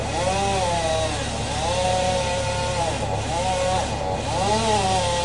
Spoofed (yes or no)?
no